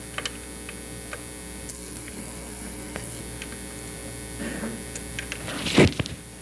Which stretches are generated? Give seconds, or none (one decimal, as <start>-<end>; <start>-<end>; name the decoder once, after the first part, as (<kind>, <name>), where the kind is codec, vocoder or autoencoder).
1.7-3.2 (codec, SNAC)